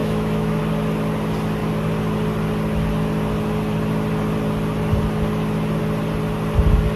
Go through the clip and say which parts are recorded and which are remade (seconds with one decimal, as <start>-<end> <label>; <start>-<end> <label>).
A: 0.0-0.6 remade; 0.6-7.0 recorded